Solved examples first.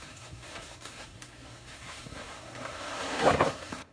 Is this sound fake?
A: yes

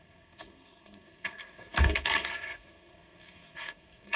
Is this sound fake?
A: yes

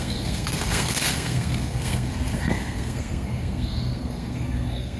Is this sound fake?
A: yes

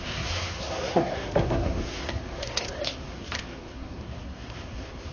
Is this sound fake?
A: yes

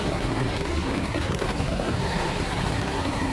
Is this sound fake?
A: yes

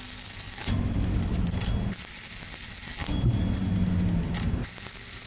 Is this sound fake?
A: no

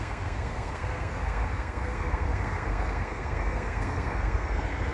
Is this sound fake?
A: yes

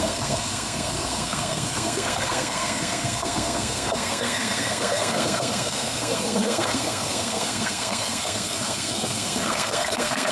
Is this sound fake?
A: yes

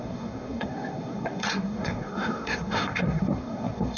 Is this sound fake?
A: yes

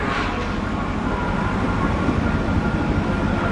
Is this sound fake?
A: no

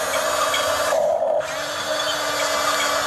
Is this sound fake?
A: no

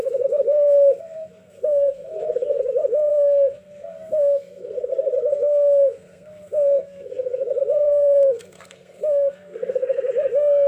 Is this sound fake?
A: yes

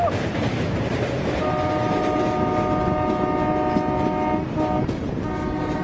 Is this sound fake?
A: no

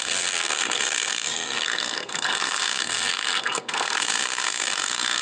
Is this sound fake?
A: yes